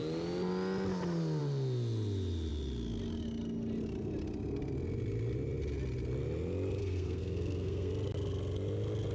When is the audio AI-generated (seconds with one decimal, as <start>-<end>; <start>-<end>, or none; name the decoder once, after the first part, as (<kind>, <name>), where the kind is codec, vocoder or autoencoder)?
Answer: 6.8-7.9 (codec, SNAC)